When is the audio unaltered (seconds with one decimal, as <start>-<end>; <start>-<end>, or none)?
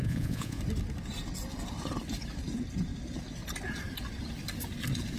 0.6-5.2